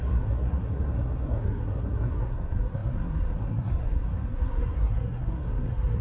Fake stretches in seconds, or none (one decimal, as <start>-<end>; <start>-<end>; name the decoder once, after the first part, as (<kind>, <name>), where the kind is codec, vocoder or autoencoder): 0.0-6.0 (codec, SNAC)